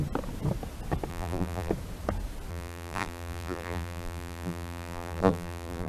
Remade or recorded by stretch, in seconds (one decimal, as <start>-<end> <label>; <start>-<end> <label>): 0.0-1.1 recorded; 1.1-1.7 remade; 1.7-2.5 recorded; 2.5-5.9 remade